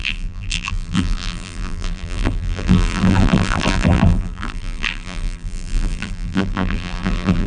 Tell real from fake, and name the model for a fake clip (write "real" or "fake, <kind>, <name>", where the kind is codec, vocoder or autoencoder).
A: fake, vocoder, BigVGAN v2